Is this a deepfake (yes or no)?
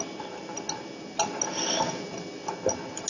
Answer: no